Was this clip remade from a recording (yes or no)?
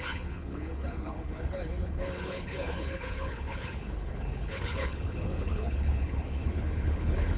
yes